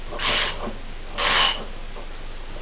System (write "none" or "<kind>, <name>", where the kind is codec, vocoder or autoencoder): none